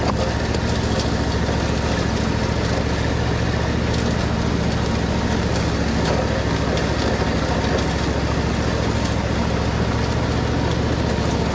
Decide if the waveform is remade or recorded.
recorded